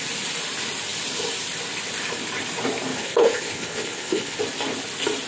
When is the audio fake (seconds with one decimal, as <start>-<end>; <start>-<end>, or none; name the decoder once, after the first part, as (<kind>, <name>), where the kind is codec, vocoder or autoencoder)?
2.9-4.4 (codec, HILCodec)